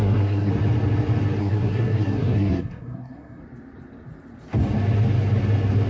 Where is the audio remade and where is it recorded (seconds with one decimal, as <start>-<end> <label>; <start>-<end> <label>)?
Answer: 0.0-0.5 remade; 0.5-1.4 recorded; 1.4-3.4 remade; 3.4-5.9 recorded